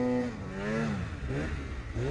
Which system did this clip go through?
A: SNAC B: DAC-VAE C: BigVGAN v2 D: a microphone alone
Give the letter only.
D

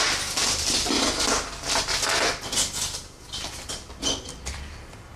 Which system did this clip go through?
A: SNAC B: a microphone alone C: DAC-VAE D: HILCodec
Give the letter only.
B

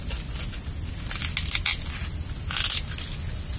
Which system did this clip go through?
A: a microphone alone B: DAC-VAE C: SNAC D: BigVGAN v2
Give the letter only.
A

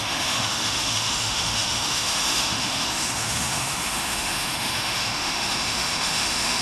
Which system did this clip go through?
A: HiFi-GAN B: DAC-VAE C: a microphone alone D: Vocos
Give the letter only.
B